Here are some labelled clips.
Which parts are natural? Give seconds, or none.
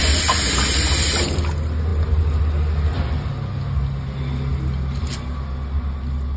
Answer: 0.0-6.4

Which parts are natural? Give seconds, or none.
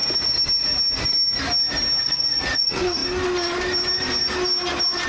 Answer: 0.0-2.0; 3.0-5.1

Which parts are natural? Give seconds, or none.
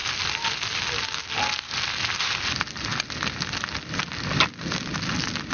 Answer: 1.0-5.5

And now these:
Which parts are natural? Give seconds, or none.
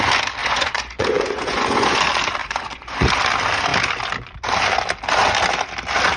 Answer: 0.0-0.4; 2.0-2.4; 3.1-6.2